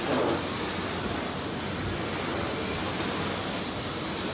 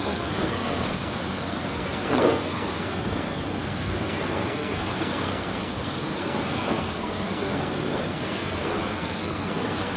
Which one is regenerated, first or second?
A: second